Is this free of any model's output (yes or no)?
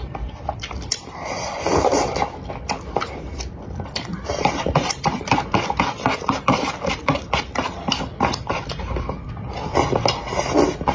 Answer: no